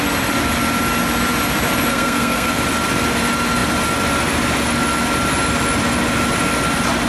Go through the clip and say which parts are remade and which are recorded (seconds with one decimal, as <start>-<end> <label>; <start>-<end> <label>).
0.0-1.9 recorded; 1.9-2.6 remade; 2.6-7.1 recorded